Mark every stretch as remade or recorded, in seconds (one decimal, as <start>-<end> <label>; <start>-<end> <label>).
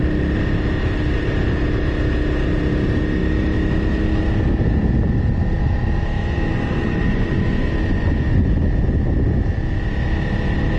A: 0.0-6.2 recorded; 6.2-8.9 remade; 8.9-10.8 recorded